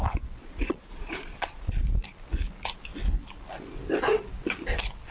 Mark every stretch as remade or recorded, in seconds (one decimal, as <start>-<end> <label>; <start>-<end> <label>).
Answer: 0.0-0.5 recorded; 0.5-1.7 remade; 1.7-5.1 recorded